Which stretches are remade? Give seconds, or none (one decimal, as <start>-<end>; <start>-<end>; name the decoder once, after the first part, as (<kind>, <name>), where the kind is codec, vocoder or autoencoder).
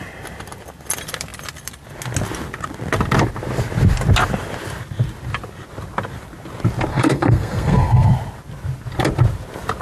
6.9-8.1 (codec, SNAC)